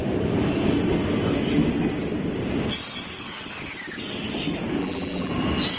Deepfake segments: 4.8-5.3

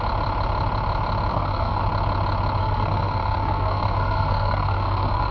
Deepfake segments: 1.3-1.8; 2.6-5.3

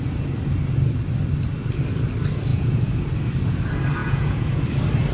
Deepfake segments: 2.5-3.0; 4.0-4.6

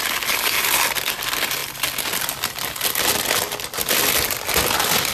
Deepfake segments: none

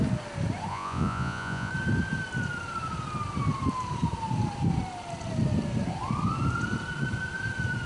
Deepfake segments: 0.7-1.7

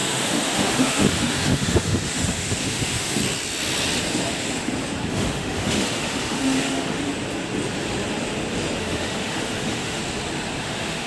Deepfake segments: 0.0-3.2; 5.1-7.1; 8.8-10.0; 10.6-11.1

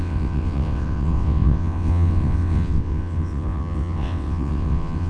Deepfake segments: 0.0-5.1